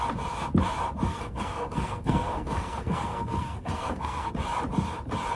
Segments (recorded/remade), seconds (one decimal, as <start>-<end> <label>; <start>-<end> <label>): 0.0-1.1 recorded; 1.1-4.3 remade; 4.3-5.4 recorded